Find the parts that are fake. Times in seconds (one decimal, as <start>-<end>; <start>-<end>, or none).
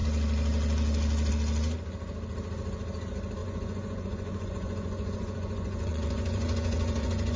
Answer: 3.4-7.4